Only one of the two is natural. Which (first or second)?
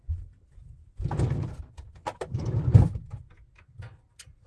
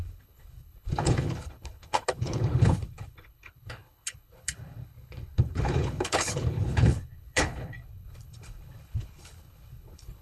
first